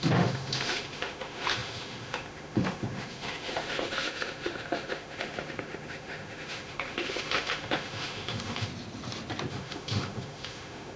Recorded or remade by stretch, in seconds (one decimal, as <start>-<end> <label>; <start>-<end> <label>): 0.0-8.7 remade; 8.7-9.5 recorded; 9.5-11.0 remade